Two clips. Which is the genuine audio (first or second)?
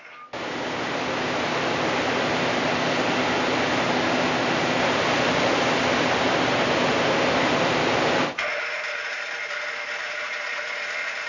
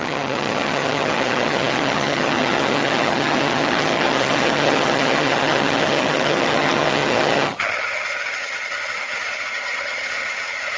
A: first